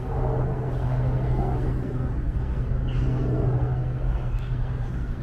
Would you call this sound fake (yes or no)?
yes